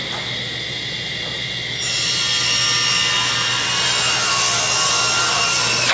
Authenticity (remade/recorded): recorded